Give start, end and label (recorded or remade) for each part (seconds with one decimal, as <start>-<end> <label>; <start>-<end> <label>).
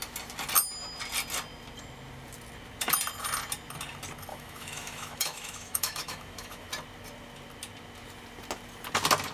0.0-4.3 recorded; 4.3-6.7 remade; 6.7-9.3 recorded